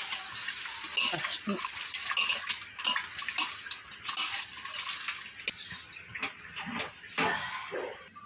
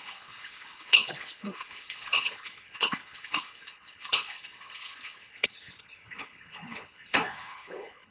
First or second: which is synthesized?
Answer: second